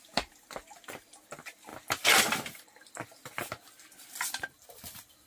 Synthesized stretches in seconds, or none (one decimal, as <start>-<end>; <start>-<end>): none